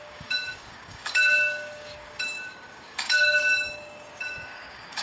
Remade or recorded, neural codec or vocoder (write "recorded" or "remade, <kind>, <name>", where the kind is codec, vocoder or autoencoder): remade, codec, DAC